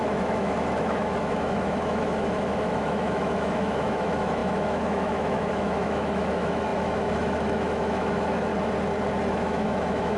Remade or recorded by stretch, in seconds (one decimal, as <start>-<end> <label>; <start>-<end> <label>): 0.0-8.5 remade; 8.5-9.3 recorded; 9.3-10.2 remade